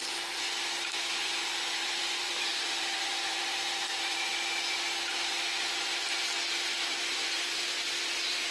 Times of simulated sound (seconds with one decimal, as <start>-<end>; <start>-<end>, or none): 0.0-4.3; 6.5-8.5